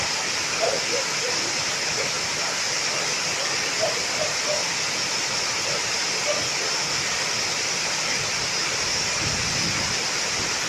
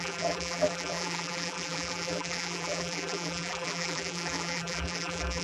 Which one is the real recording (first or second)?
first